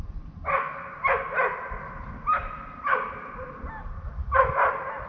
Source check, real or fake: real